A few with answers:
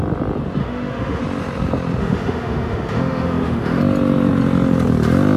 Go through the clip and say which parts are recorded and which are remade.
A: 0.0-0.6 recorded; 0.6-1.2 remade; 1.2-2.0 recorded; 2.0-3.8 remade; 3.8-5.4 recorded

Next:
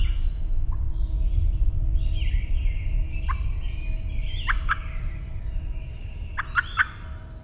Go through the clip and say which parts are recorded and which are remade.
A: 0.0-4.2 recorded; 4.2-6.4 remade; 6.4-7.4 recorded

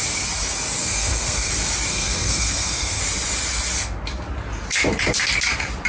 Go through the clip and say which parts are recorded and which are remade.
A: 0.0-0.8 recorded; 0.8-1.5 remade; 1.5-1.9 recorded; 1.9-3.0 remade; 3.0-5.9 recorded

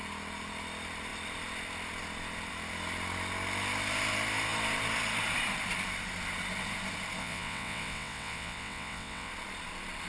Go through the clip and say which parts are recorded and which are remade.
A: 0.0-7.2 recorded; 7.2-9.3 remade; 9.3-10.1 recorded

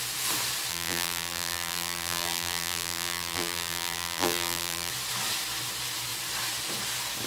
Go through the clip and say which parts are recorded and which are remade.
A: 0.0-0.7 recorded; 0.7-4.9 remade; 4.9-7.3 recorded